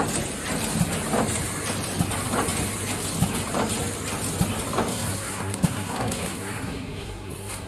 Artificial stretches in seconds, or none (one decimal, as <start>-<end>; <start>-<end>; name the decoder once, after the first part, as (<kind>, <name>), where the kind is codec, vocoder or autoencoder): 4.9-7.7 (codec, SNAC)